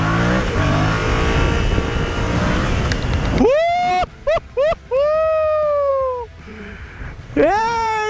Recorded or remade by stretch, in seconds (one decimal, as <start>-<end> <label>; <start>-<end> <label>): 0.0-6.5 recorded; 6.5-8.1 remade